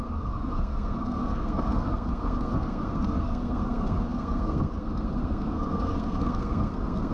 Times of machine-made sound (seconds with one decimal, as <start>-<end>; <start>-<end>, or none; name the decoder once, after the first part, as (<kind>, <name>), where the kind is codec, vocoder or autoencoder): 0.0-7.1 (codec, SNAC)